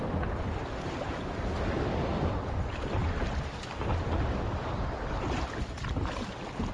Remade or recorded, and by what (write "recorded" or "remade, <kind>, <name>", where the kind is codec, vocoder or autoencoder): recorded